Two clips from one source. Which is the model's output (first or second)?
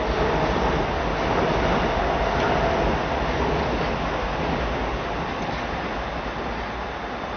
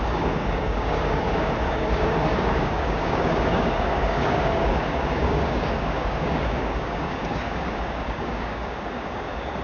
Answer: second